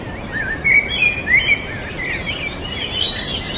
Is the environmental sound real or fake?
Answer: real